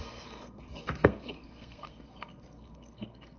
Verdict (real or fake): fake